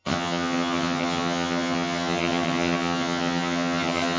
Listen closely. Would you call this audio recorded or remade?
remade